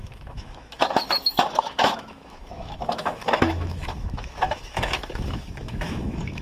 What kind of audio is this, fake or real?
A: fake